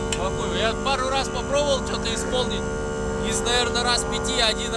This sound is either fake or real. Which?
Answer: real